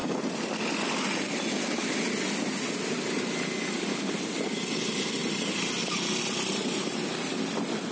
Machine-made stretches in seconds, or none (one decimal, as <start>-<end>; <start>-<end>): none